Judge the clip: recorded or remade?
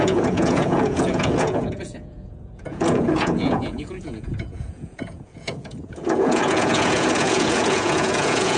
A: remade